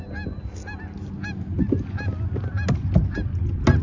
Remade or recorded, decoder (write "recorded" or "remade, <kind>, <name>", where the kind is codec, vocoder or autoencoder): recorded